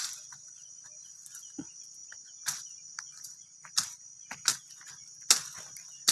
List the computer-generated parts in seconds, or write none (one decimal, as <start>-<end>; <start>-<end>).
none

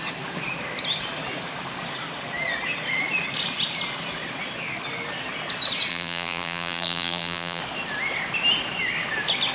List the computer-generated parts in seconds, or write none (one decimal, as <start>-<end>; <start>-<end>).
5.9-7.6